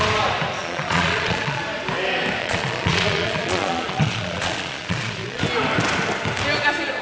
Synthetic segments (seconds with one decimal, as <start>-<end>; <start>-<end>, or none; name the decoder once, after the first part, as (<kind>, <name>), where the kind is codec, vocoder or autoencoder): 0.6-1.6 (vocoder, Vocos); 2.4-5.4